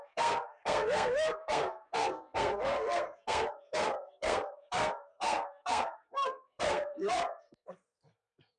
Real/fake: fake